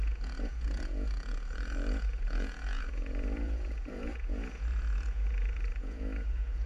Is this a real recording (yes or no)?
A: no